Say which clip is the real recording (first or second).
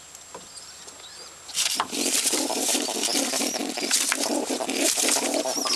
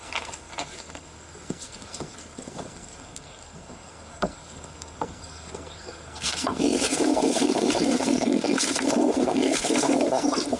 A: first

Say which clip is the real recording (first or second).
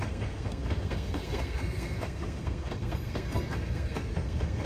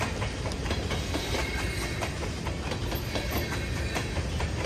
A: second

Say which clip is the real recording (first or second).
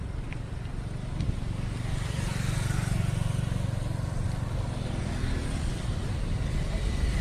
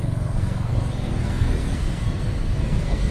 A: first